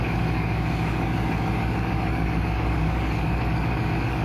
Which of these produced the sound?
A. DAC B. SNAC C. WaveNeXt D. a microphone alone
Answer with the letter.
A